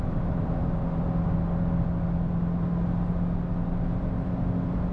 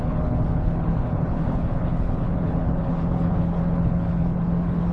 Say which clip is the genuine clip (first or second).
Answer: first